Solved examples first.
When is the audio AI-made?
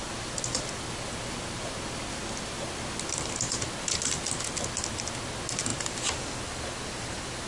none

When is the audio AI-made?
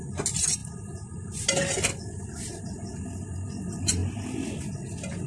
none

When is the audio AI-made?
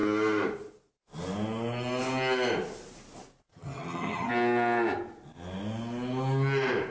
3.5-4.3 (vocoder, HiFi-GAN)